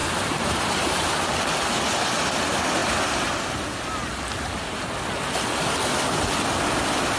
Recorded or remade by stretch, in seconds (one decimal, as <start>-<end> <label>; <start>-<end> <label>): 0.0-1.1 remade; 1.1-7.2 recorded